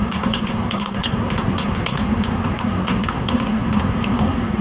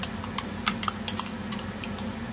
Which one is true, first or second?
second